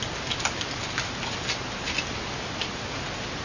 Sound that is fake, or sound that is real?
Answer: real